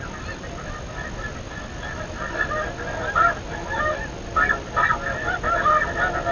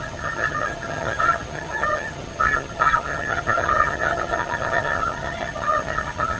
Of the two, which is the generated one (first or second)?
second